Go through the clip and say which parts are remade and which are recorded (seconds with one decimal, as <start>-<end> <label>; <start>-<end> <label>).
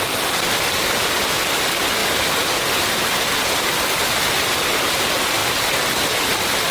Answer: 0.0-5.4 remade; 5.4-6.7 recorded